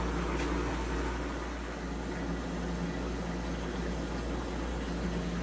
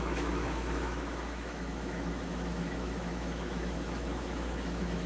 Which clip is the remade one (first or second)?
second